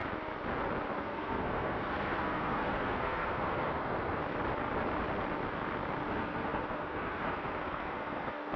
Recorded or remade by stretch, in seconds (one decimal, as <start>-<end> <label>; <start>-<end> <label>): 0.0-1.0 recorded; 1.0-4.2 remade; 4.2-6.1 recorded; 6.1-8.6 remade